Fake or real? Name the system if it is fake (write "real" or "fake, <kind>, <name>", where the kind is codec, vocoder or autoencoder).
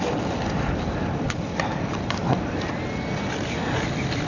real